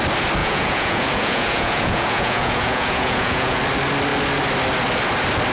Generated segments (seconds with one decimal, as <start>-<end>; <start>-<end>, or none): 0.4-3.6